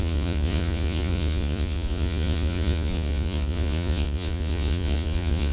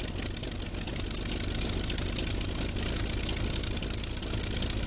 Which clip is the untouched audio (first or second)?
second